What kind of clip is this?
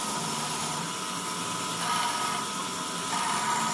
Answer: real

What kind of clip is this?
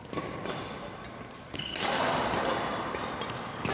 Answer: real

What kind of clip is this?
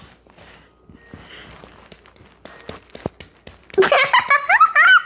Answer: real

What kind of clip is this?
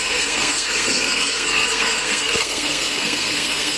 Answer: fake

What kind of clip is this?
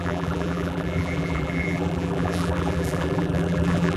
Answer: fake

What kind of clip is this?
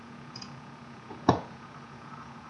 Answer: fake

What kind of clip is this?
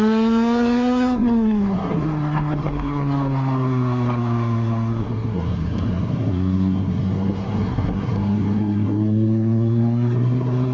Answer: fake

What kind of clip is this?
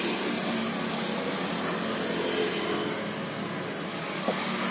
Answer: real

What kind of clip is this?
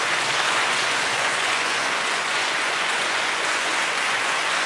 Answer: fake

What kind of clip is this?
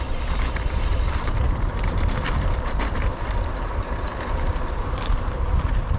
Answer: fake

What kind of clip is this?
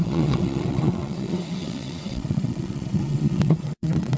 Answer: fake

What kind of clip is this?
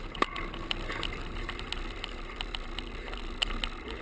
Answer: real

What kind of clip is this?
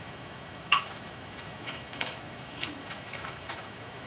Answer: fake